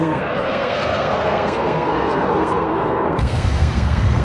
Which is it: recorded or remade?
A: remade